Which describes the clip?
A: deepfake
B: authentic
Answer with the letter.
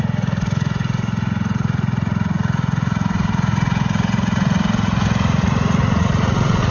A